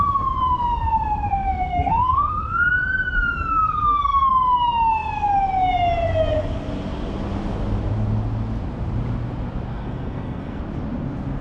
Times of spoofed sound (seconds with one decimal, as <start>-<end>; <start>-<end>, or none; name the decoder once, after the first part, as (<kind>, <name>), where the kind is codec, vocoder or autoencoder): 1.3-2.7 (codec, SNAC); 3.5-4.3; 9.7-10.6